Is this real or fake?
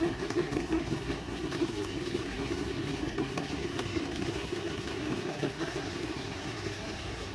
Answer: fake